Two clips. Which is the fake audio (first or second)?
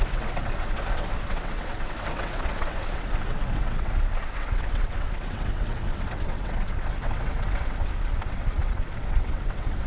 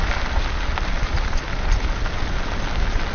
first